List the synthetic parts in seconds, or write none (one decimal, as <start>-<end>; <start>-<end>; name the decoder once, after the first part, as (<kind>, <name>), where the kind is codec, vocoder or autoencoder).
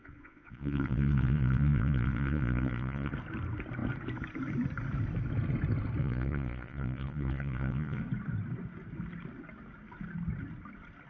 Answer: 0.0-3.1 (vocoder, Vocos); 6.0-8.0